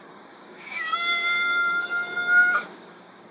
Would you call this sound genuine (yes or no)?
no